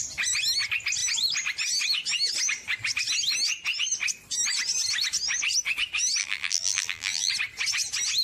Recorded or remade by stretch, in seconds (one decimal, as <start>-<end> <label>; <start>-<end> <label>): 0.0-6.2 recorded; 6.2-7.3 remade; 7.3-8.2 recorded